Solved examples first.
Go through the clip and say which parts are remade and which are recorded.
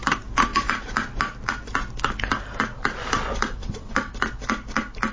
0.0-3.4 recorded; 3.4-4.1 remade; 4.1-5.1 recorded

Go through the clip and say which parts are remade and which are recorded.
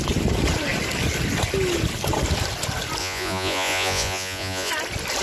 0.0-3.0 recorded; 3.0-4.7 remade; 4.7-5.2 recorded